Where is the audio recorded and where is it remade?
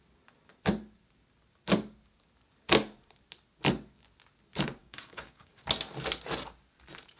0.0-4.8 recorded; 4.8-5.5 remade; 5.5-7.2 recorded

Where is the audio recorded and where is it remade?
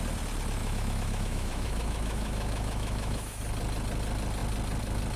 0.0-0.6 recorded; 0.6-3.4 remade; 3.4-5.2 recorded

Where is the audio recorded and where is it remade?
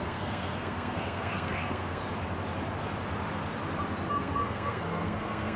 0.0-2.0 remade; 2.0-4.1 recorded; 4.1-5.6 remade